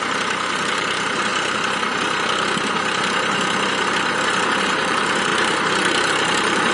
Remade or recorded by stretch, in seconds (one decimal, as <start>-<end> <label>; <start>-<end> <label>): 0.0-1.3 remade; 1.3-4.6 recorded; 4.6-6.7 remade